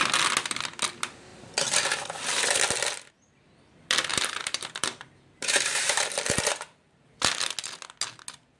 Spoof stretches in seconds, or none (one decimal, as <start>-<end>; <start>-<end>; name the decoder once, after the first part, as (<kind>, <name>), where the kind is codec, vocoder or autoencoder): 4.1-7.5 (vocoder, BigVGAN v2)